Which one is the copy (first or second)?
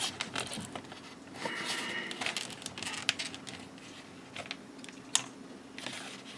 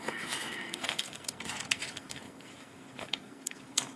second